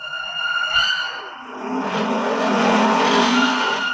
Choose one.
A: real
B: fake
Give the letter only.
B